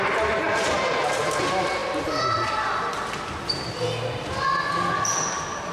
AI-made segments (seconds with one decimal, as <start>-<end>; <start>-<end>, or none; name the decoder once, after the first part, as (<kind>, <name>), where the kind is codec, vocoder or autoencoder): none